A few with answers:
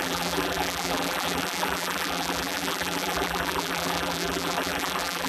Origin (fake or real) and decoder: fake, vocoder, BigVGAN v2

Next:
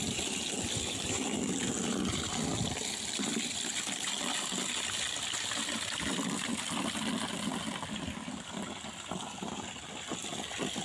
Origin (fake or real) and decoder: real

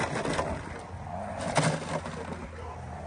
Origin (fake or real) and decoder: real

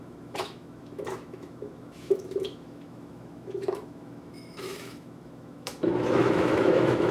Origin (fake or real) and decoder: fake, autoencoder, DAC-VAE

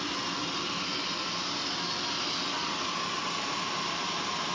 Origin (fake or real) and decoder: real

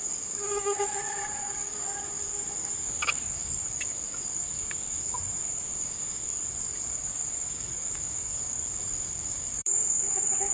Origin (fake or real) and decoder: fake, codec, DAC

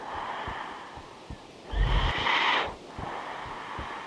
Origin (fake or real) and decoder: fake, vocoder, BigVGAN v2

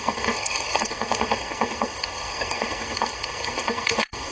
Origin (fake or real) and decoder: fake, codec, SNAC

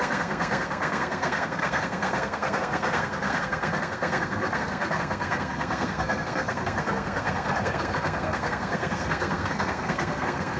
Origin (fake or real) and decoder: fake, codec, SNAC